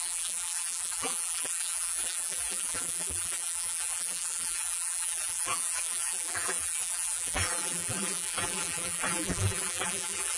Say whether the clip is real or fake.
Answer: fake